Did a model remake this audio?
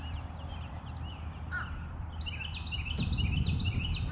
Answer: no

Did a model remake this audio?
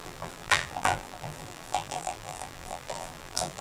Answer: yes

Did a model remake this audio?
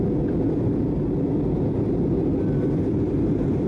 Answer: no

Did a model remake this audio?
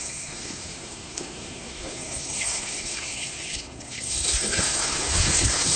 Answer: yes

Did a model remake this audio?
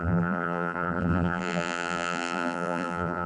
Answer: yes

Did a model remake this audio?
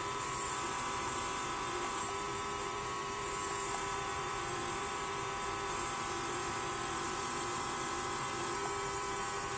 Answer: yes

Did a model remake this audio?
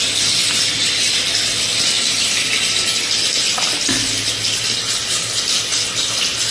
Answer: no